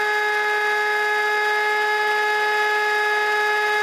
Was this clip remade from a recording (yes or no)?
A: no